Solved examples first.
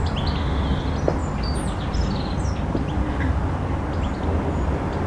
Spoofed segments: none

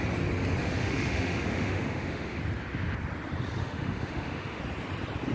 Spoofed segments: 0.6-2.4; 3.6-4.6

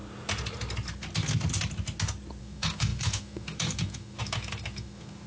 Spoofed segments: 2.4-5.3

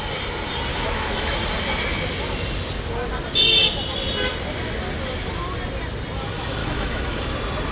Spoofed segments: 0.7-1.4; 6.6-7.2

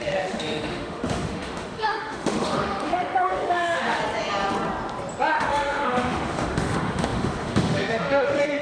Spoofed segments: 0.0-4.0; 5.3-8.6

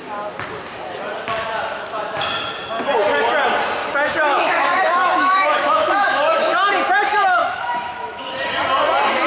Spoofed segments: 3.8-6.7; 7.4-8.3

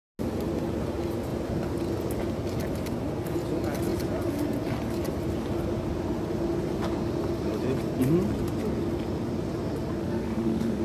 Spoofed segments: 10.0-10.8